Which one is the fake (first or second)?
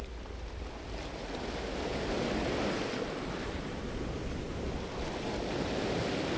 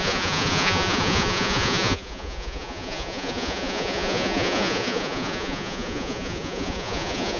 second